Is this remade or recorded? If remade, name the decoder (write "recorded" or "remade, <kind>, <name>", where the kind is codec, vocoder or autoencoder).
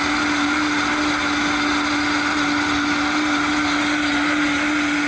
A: recorded